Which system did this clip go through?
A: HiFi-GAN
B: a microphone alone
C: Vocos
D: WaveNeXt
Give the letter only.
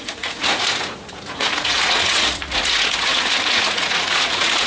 C